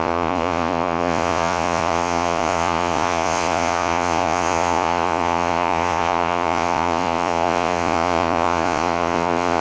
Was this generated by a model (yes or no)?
yes